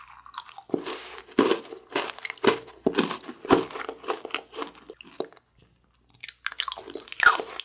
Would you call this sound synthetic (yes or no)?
no